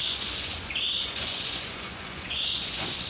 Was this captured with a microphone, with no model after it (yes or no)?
no